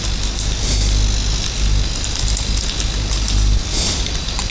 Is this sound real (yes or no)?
yes